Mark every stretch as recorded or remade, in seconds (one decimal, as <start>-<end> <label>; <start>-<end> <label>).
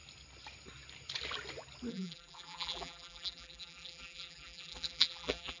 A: 0.0-1.9 recorded; 1.9-5.6 remade